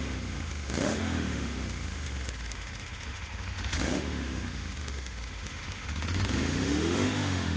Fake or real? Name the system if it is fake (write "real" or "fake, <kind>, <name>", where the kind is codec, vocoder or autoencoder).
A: fake, autoencoder, DAC-VAE